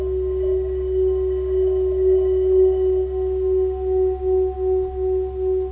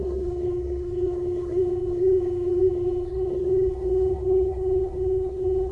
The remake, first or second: second